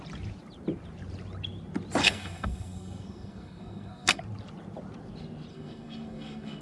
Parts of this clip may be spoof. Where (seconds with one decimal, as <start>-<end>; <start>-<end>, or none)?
2.0-4.2; 5.5-6.6